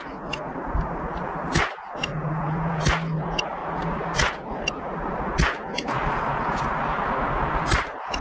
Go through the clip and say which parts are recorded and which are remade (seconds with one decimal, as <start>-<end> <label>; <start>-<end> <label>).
0.0-2.2 recorded; 2.2-2.8 remade; 2.8-8.2 recorded

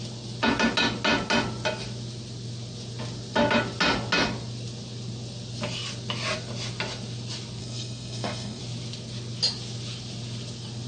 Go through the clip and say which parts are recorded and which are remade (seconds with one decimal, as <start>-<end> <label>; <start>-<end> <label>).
0.0-7.6 recorded; 7.6-8.6 remade; 8.6-10.9 recorded

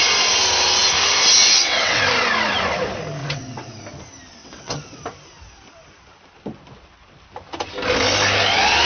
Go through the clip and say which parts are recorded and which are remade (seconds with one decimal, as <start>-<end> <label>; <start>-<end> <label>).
0.0-1.4 recorded; 1.4-2.0 remade; 2.0-3.2 recorded; 3.2-3.8 remade; 3.8-4.4 recorded; 4.4-5.0 remade; 5.0-8.9 recorded

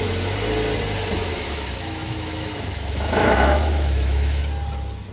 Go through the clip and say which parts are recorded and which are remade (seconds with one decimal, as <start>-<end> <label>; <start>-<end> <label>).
0.0-1.3 recorded; 1.3-4.4 remade; 4.4-5.1 recorded